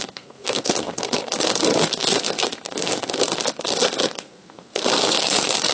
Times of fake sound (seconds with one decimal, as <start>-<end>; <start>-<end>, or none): 0.0-5.7